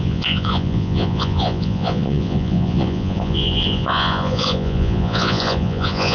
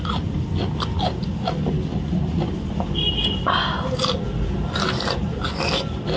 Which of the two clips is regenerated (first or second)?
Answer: first